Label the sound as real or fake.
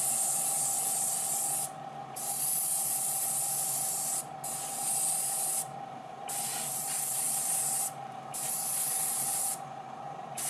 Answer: real